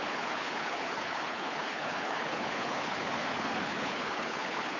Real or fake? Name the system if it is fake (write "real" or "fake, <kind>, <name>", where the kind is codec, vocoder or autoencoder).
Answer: fake, codec, HILCodec